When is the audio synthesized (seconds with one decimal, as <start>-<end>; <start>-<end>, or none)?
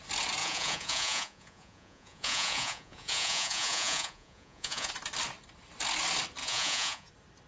0.4-4.9; 6.4-7.1